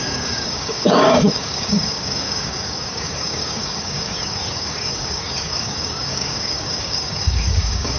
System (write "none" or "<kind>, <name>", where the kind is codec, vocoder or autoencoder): codec, DAC